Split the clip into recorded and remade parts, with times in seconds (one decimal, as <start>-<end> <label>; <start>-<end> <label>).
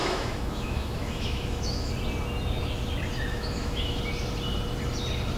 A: 0.0-1.9 remade; 1.9-3.3 recorded; 3.3-4.0 remade; 4.0-5.4 recorded